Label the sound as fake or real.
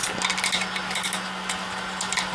real